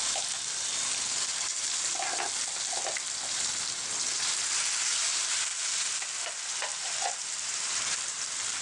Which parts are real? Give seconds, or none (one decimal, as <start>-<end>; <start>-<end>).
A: 0.0-6.7; 8.2-8.6

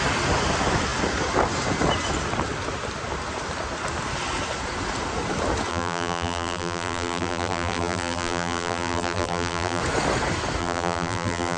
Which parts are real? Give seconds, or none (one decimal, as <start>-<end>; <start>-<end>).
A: 0.0-5.7; 9.8-10.6

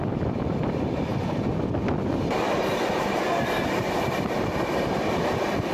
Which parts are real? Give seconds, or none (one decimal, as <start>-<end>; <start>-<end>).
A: 0.0-5.7